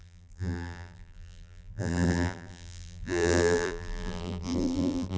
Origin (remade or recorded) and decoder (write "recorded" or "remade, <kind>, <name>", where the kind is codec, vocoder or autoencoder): remade, vocoder, BigVGAN v2